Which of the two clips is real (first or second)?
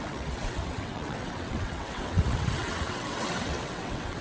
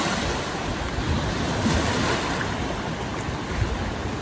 second